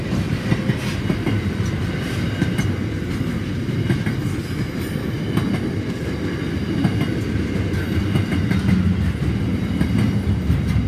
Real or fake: real